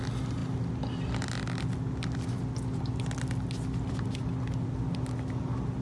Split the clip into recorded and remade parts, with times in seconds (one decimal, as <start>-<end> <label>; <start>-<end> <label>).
0.0-5.8 recorded